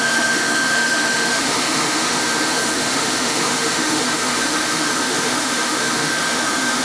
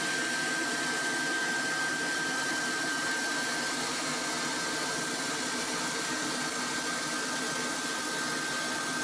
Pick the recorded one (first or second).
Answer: second